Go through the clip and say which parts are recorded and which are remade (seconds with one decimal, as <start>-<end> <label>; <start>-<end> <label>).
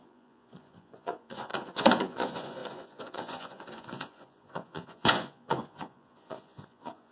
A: 0.0-7.1 remade